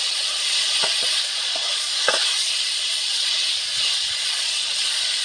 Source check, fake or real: fake